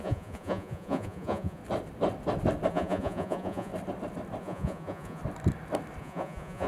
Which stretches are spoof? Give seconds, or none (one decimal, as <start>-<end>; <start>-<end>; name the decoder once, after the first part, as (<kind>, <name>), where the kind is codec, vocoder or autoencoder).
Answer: 0.0-1.6 (vocoder, Vocos); 2.7-3.7; 4.4-5.2; 6.0-6.7

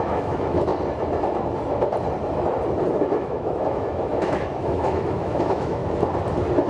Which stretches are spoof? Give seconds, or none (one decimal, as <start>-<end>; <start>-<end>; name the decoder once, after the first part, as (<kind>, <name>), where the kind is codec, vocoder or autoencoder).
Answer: 0.0-0.7 (autoencoder, DAC-VAE); 2.9-5.8

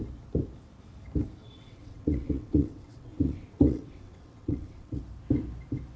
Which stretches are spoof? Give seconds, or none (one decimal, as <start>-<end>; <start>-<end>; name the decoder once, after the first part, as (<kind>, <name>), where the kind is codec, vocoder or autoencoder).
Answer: 1.4-5.0 (vocoder, WaveNeXt)